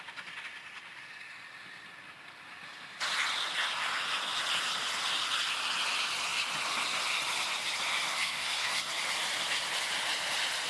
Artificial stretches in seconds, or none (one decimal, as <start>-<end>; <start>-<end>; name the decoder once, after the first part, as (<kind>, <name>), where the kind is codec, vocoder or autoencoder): 8.1-8.9 (codec, SNAC)